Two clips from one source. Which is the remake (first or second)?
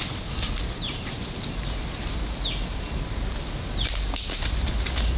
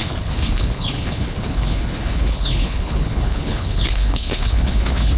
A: second